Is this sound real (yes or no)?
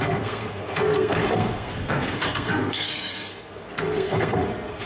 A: no